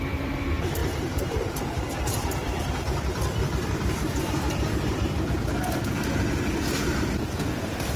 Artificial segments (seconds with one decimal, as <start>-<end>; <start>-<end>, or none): 0.0-8.0